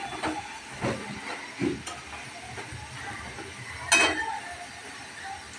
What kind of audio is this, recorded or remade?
recorded